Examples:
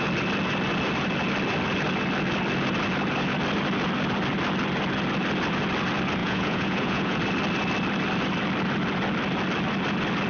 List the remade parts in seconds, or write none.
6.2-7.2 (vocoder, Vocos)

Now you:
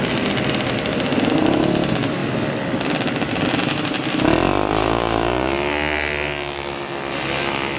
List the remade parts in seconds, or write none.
none

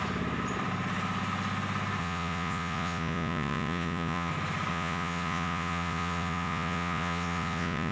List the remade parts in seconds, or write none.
2.0-4.3 (vocoder, Vocos); 4.7-7.9

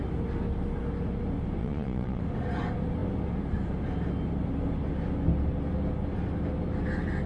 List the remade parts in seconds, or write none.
1.6-2.2 (vocoder, Vocos)

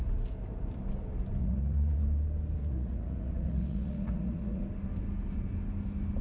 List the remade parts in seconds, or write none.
1.4-2.0 (vocoder, Vocos); 2.6-4.6